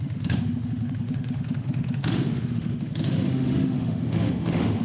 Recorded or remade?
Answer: remade